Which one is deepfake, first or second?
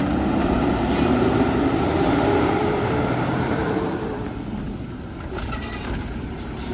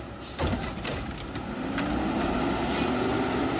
first